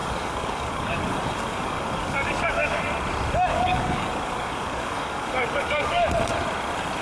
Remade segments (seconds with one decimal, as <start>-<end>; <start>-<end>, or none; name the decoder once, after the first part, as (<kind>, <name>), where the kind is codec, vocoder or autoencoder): 0.0-2.8 (codec, DAC); 3.5-6.1

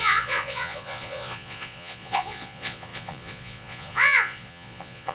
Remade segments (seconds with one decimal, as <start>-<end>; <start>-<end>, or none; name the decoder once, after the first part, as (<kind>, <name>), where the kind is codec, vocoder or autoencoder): 0.0-5.1 (vocoder, Vocos)

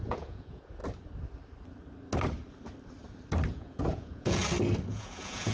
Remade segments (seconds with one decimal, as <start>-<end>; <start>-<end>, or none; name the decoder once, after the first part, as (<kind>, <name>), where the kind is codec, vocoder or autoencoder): 0.0-0.8 (vocoder, Vocos); 3.5-4.4; 4.9-5.5

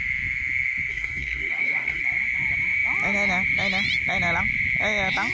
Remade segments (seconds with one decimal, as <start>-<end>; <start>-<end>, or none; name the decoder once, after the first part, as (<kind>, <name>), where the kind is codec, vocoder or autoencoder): 0.9-2.0 (codec, SNAC)

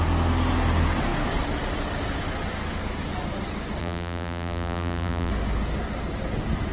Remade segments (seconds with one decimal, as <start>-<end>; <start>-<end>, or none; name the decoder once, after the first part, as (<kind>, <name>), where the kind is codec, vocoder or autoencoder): 3.8-5.3 (vocoder, BigVGAN v2)